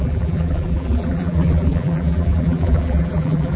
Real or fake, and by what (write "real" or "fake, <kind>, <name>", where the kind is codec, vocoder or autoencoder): fake, vocoder, BigVGAN v2